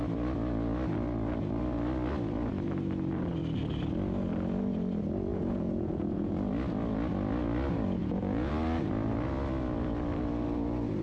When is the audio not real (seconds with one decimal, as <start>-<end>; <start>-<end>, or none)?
5.3-6.3; 8.0-8.5